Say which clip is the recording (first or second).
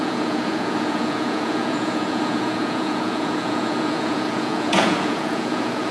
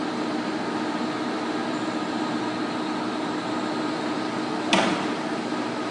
second